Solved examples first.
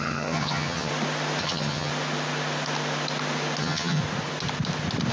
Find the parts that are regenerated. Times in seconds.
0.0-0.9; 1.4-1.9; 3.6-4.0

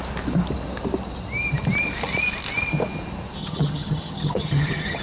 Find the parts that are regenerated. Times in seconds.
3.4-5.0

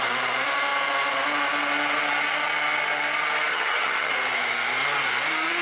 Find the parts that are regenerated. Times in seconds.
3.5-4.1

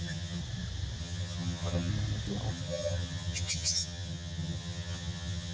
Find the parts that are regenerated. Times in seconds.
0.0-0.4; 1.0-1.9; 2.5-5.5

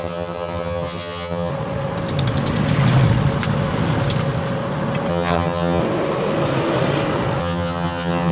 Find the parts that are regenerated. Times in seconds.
0.0-1.5; 5.1-5.8; 7.4-8.3

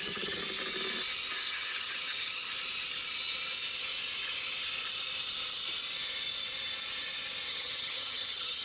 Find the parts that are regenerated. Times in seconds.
0.0-0.4; 1.5-2.5; 7.5-8.6